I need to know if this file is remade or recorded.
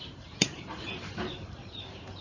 remade